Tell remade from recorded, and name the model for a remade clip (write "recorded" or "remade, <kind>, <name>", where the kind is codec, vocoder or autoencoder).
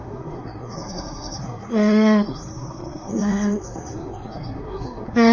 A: remade, codec, SNAC